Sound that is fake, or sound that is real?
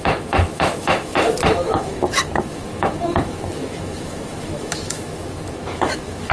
fake